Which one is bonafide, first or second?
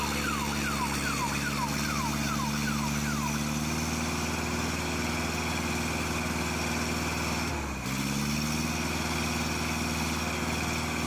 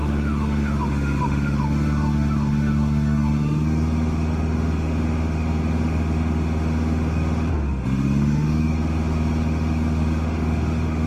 first